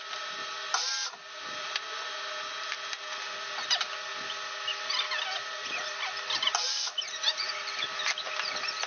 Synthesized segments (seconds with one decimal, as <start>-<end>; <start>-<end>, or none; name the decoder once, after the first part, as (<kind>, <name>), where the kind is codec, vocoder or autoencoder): 6.6-7.6 (vocoder, BigVGAN v2)